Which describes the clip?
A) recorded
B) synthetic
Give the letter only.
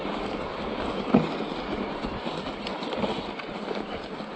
A